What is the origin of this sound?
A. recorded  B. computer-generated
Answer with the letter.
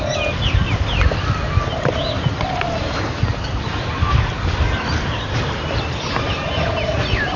A